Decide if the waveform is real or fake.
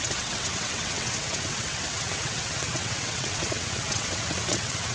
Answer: fake